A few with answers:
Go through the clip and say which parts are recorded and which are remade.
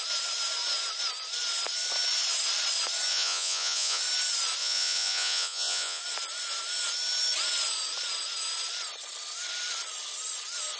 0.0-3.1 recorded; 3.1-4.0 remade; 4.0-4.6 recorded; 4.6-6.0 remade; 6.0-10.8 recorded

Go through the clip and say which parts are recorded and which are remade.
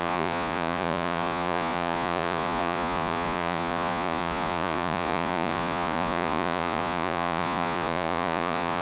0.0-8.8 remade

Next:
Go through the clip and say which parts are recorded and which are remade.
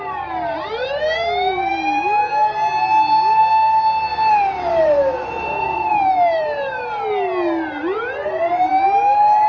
0.0-1.7 remade; 1.7-4.3 recorded; 4.3-8.7 remade; 8.7-9.5 recorded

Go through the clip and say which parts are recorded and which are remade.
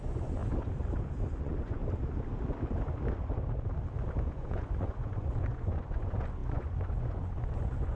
0.0-0.4 remade; 0.4-1.4 recorded; 1.4-1.8 remade; 1.8-4.1 recorded; 4.1-8.0 remade